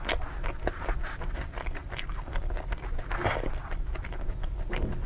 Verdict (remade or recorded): recorded